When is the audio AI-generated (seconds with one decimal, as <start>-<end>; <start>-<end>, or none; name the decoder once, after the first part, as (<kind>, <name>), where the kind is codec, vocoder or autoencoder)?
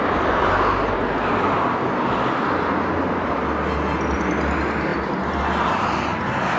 none